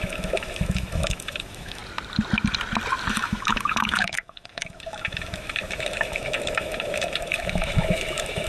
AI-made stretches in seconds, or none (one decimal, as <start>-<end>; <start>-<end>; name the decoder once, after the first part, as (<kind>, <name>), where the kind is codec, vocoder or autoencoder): 0.0-1.8 (autoencoder, DAC-VAE); 3.1-8.5